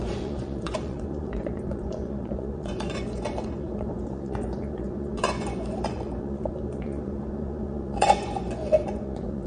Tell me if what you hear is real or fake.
fake